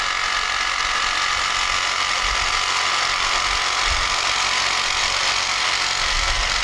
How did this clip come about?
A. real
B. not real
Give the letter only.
A